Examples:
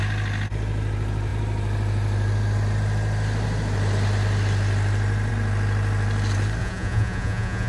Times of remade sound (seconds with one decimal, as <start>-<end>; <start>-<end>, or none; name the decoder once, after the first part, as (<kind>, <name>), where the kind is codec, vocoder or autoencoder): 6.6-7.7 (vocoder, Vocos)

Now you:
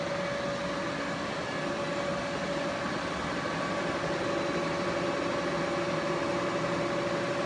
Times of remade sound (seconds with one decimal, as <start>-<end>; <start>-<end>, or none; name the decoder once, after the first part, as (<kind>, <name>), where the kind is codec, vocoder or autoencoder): none

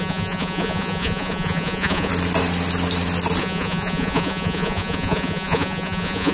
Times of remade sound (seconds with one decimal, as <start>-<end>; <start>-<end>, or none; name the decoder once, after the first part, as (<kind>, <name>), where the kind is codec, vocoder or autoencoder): 0.0-2.1 (vocoder, Vocos); 3.4-6.3